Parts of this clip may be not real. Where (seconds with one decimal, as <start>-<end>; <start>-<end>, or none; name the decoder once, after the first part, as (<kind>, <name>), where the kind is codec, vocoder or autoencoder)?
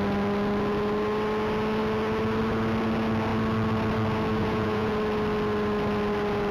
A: 4.4-4.9 (vocoder, Vocos)